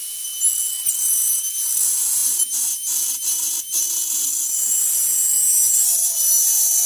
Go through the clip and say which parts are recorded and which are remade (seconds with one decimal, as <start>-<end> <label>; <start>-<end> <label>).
0.0-6.9 recorded